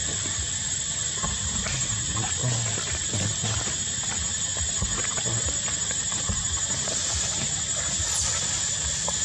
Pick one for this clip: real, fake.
real